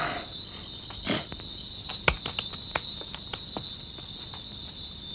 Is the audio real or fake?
real